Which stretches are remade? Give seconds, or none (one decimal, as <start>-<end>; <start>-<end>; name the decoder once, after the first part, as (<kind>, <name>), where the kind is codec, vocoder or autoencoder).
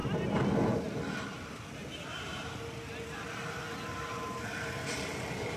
none